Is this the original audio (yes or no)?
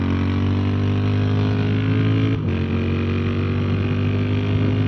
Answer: yes